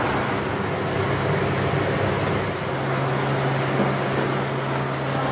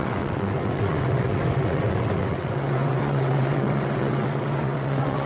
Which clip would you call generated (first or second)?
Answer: second